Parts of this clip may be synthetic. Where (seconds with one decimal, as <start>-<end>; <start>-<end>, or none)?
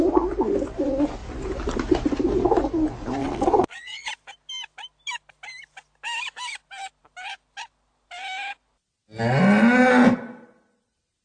3.2-4.1